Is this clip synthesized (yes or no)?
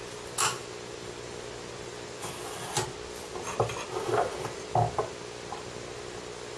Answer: no